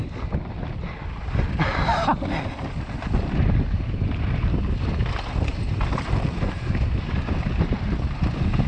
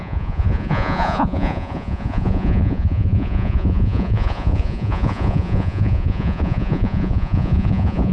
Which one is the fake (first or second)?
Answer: second